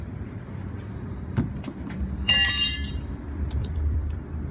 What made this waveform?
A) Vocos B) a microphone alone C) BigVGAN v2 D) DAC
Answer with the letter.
C